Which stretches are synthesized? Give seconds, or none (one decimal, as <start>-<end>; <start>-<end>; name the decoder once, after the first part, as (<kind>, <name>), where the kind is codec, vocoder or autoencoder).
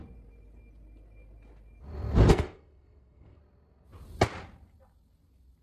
2.3-3.4 (codec, SNAC)